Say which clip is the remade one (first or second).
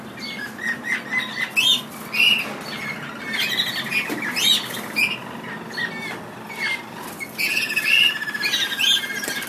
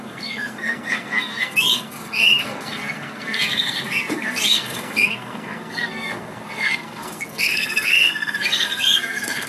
second